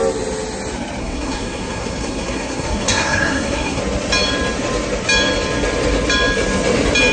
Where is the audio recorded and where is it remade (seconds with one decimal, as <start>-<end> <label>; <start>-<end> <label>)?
0.0-1.0 recorded; 1.0-3.8 remade; 3.8-7.1 recorded